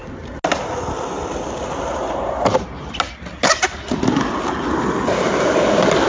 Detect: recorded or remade recorded